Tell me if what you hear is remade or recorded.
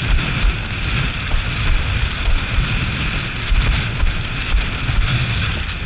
recorded